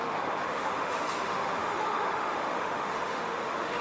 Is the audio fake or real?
fake